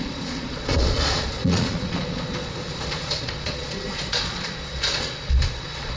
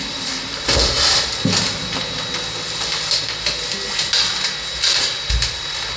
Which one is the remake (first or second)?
first